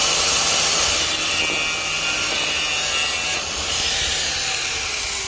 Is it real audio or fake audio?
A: real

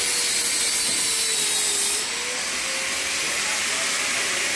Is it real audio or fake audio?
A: real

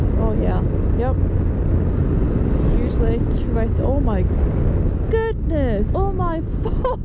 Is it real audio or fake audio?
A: real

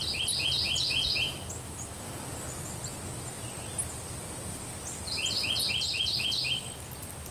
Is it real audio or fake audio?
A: real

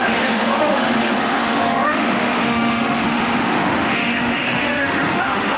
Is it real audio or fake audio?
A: fake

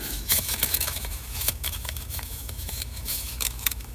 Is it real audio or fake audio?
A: fake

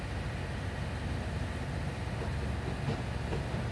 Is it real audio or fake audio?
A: real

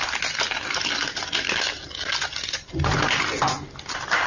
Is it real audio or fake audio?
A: real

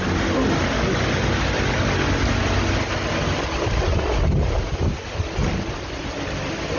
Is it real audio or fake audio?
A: real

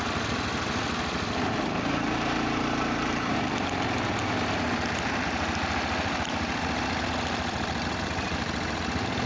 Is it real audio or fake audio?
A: real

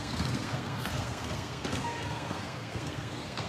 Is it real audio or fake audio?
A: fake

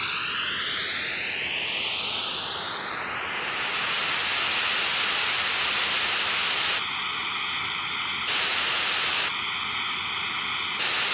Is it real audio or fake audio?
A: real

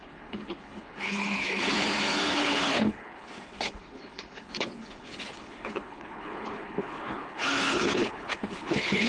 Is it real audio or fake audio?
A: fake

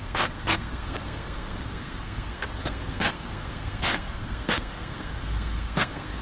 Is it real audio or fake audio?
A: fake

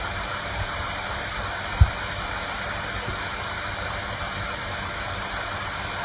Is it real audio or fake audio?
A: real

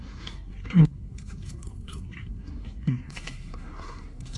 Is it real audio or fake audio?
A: fake